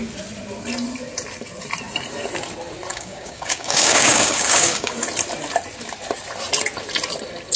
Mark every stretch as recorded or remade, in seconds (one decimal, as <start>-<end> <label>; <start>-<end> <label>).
0.0-2.9 recorded; 2.9-4.9 remade; 4.9-7.6 recorded